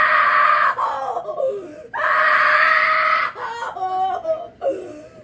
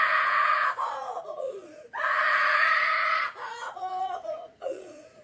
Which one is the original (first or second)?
first